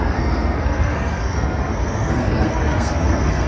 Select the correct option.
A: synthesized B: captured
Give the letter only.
A